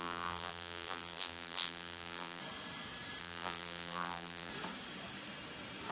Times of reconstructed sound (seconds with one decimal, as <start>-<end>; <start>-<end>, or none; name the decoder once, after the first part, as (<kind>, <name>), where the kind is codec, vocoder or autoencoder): 0.0-2.4 (vocoder, BigVGAN v2); 3.2-4.5